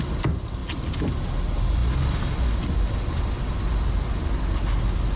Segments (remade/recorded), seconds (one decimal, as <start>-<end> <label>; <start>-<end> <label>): 0.0-0.6 recorded; 0.6-1.2 remade; 1.2-5.2 recorded

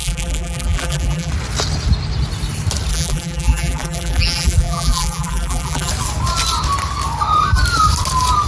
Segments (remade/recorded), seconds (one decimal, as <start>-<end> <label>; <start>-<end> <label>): 0.0-1.3 remade; 1.3-2.9 recorded; 2.9-5.9 remade; 5.9-8.5 recorded

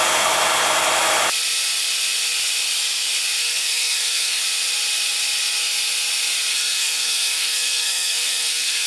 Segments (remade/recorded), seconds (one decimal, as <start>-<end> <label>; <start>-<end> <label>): 0.0-3.4 recorded; 3.4-4.4 remade; 4.4-6.5 recorded; 6.5-8.9 remade

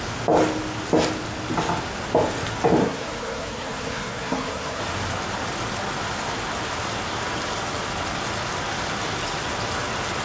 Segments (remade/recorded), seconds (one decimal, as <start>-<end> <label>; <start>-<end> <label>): 0.0-2.8 recorded; 2.8-4.8 remade; 4.8-10.2 recorded

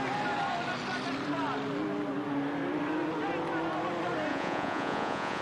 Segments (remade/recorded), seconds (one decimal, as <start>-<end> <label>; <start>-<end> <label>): 0.0-4.3 recorded; 4.3-5.4 remade

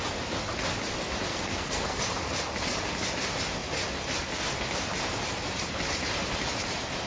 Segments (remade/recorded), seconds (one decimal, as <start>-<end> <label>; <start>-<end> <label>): 0.0-1.3 recorded; 1.3-2.0 remade; 2.0-7.1 recorded

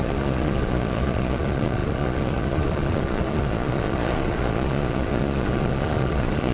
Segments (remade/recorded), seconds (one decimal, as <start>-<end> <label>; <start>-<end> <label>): 0.0-6.5 remade

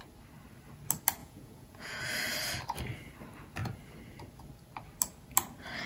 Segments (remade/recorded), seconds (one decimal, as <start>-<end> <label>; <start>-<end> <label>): 0.0-1.2 recorded; 1.2-2.0 remade; 2.0-5.9 recorded